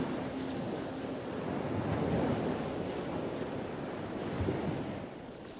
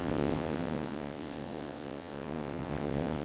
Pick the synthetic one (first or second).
second